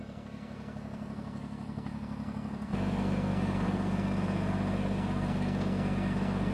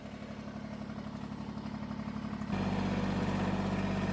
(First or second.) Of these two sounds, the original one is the second